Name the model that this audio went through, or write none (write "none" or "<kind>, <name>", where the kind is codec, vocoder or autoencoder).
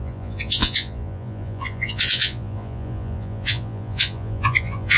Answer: vocoder, Vocos